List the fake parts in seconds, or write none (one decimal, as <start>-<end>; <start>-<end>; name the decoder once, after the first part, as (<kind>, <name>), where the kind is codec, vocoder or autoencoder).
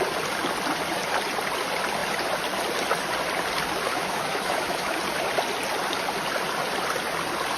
3.9-5.0 (autoencoder, DAC-VAE)